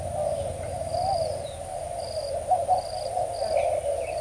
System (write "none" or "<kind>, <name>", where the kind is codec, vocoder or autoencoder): none